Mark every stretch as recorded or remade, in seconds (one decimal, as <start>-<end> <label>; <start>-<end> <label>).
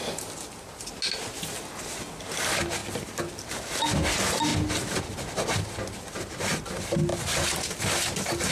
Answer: 0.0-8.5 recorded